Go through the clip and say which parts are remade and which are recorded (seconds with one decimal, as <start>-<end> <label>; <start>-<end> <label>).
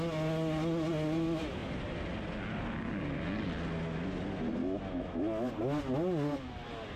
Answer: 0.0-4.6 recorded; 4.6-5.5 remade; 5.5-7.0 recorded